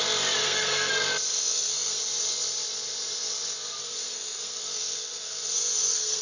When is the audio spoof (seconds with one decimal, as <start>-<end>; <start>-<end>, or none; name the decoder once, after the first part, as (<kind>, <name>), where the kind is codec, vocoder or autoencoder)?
0.4-0.9 (codec, SNAC); 1.3-2.0; 3.8-6.2